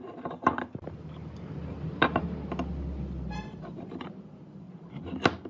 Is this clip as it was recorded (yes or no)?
yes